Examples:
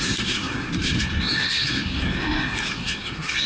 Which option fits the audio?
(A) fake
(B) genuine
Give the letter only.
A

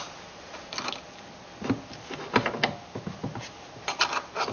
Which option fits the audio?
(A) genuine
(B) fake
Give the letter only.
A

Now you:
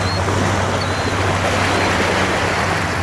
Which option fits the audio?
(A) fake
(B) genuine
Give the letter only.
B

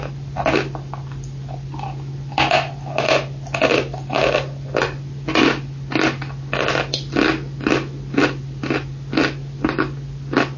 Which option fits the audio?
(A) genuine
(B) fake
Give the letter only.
A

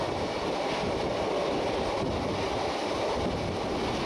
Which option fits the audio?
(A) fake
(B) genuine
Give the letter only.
B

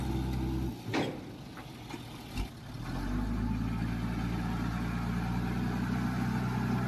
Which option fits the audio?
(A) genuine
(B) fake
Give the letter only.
A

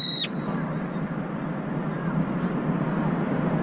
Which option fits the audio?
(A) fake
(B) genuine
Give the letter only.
B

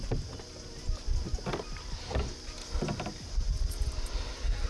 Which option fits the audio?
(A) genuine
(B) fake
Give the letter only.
A